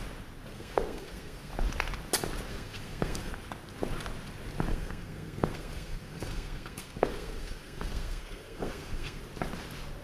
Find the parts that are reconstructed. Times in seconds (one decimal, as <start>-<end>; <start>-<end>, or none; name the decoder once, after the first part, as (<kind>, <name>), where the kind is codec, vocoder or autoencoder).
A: 0.5-1.5 (codec, SNAC); 2.5-3.3; 4.7-9.2